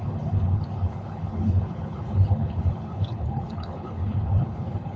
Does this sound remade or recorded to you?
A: remade